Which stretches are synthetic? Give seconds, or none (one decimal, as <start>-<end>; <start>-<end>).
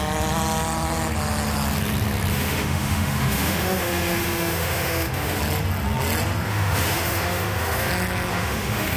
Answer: 2.3-5.4; 6.5-7.9; 8.3-9.0